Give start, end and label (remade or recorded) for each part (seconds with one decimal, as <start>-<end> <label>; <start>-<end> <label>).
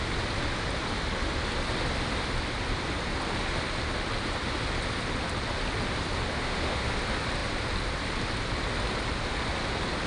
0.0-6.3 recorded; 6.3-6.9 remade; 6.9-10.1 recorded